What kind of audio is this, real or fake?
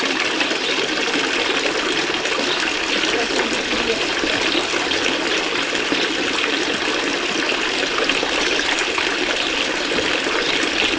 real